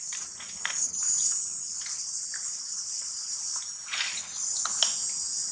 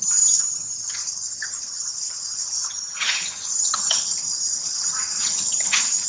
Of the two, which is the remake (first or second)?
second